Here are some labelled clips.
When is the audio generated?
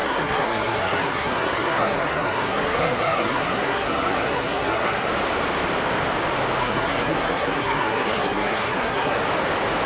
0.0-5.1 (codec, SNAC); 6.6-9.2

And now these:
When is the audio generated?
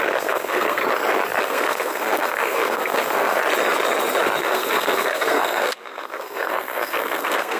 0.0-0.8 (codec, SNAC); 1.4-3.4; 4.4-7.6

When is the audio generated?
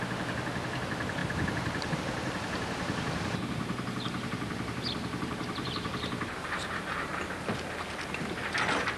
1.2-2.0 (vocoder, BigVGAN v2); 3.4-7.2